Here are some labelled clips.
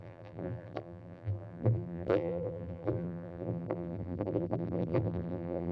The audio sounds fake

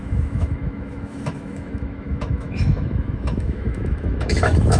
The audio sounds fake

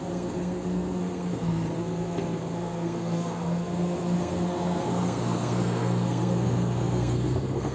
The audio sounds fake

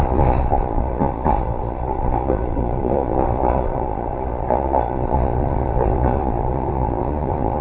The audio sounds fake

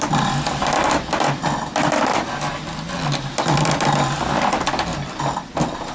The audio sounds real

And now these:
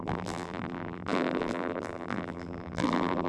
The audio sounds fake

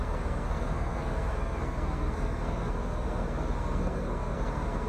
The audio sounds fake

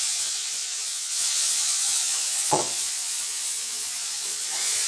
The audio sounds fake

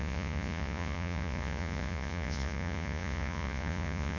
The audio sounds fake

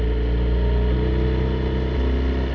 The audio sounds real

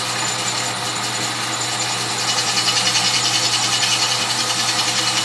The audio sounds real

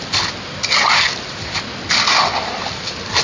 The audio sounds real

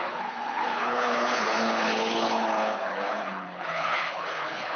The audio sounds fake